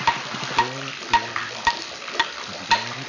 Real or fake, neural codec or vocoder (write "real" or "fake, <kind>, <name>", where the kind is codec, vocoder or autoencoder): real